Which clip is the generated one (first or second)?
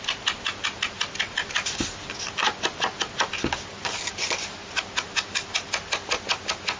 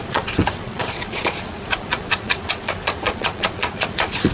second